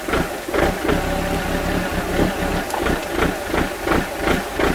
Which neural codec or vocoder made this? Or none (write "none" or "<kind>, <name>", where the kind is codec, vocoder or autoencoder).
none